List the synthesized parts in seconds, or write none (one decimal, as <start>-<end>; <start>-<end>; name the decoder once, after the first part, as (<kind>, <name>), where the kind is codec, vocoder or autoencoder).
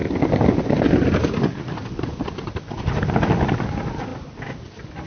none